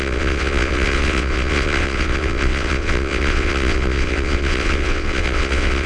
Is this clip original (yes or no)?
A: no